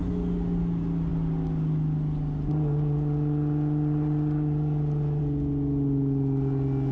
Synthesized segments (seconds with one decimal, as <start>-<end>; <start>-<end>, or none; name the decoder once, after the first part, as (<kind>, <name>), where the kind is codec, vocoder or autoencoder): none